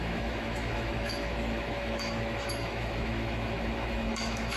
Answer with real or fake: fake